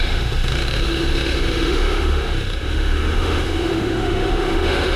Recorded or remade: remade